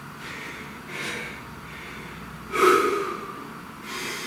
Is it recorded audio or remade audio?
recorded